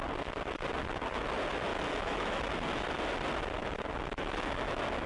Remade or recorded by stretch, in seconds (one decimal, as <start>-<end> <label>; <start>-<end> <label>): 0.0-1.7 recorded; 1.7-2.4 remade; 2.4-3.6 recorded; 3.6-5.1 remade